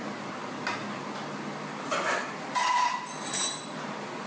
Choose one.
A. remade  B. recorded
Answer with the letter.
B